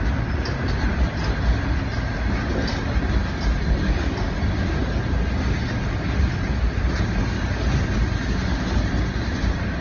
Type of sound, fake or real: real